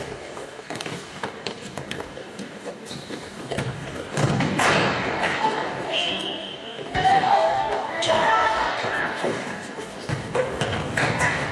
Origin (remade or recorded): remade